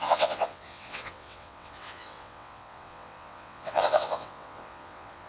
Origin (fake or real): fake